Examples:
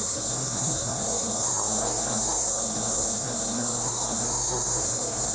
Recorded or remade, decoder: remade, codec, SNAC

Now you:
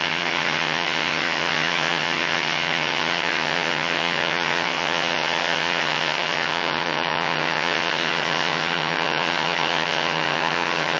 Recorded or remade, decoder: remade, vocoder, HiFi-GAN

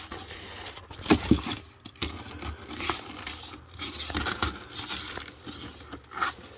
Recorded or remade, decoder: recorded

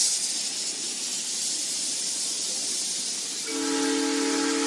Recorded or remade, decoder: recorded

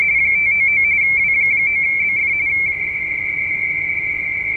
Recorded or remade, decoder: recorded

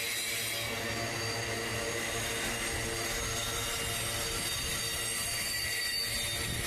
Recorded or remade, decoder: recorded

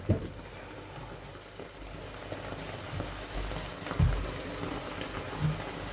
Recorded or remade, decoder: recorded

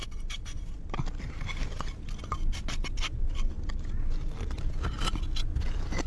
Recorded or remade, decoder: recorded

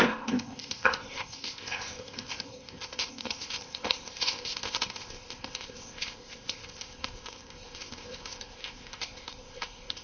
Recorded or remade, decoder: remade, codec, ZipCodec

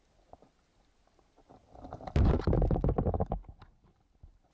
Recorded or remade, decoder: recorded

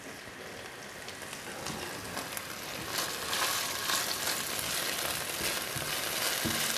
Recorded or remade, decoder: recorded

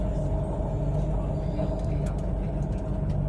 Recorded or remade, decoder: recorded